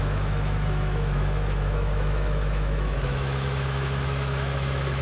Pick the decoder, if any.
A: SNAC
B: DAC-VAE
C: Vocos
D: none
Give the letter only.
B